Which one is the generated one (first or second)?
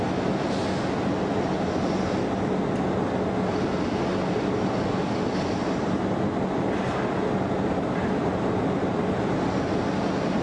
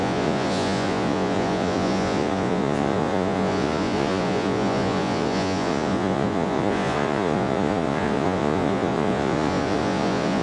second